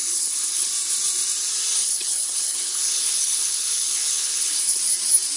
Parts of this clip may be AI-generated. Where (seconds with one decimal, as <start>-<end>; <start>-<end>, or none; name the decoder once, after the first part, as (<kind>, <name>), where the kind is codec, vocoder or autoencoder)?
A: 0.0-0.7 (codec, HILCodec); 1.8-4.8